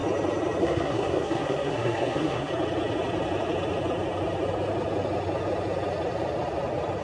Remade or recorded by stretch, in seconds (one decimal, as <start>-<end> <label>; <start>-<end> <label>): 0.0-0.6 recorded; 0.6-2.5 remade; 2.5-7.0 recorded